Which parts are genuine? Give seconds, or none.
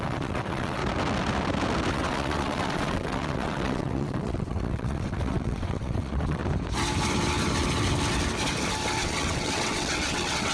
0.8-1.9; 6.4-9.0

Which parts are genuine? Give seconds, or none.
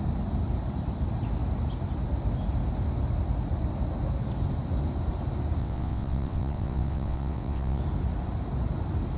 0.0-5.6; 7.8-9.2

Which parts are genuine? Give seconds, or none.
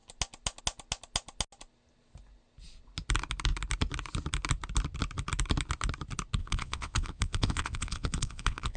0.0-6.4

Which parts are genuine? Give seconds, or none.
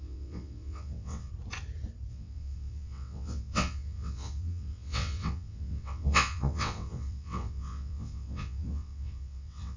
1.3-2.1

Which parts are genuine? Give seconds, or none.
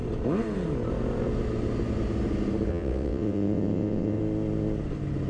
0.0-2.7; 4.2-5.3